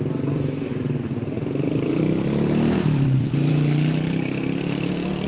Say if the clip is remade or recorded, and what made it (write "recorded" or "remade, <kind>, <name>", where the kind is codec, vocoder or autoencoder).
remade, vocoder, BigVGAN v2